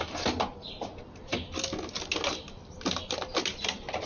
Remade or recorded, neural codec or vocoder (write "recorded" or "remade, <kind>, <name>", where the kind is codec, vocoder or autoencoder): recorded